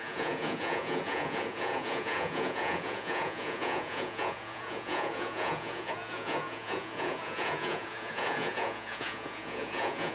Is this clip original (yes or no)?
no